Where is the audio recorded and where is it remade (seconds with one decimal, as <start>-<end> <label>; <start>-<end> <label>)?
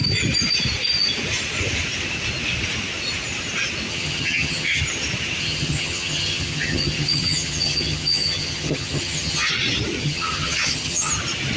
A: 0.0-3.9 recorded; 3.9-4.8 remade; 4.8-5.4 recorded; 5.4-9.5 remade; 9.5-10.0 recorded; 10.0-11.1 remade; 11.1-11.6 recorded